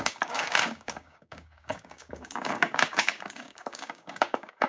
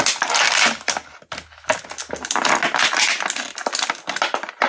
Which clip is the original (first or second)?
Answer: second